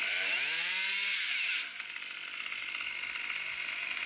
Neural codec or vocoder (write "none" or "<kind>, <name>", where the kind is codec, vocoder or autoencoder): none